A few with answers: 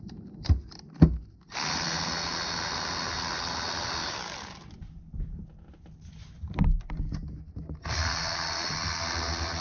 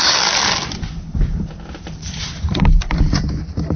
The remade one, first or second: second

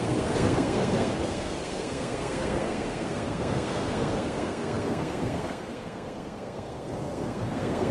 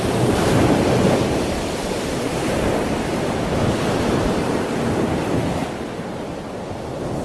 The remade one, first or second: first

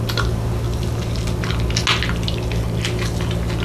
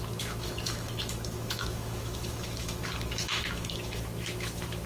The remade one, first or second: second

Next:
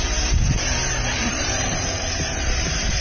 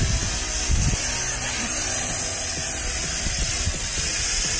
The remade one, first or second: first